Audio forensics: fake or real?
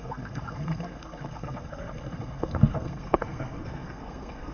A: fake